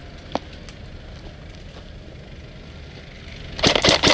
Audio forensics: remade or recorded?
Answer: recorded